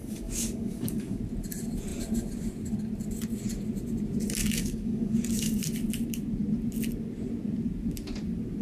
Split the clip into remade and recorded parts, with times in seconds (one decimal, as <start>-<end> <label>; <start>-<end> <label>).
0.0-1.2 remade; 1.2-4.4 recorded; 4.4-5.6 remade; 5.6-8.6 recorded